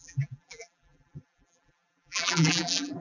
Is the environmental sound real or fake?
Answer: fake